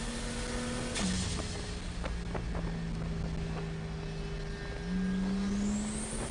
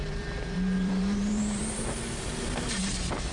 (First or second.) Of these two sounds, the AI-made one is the second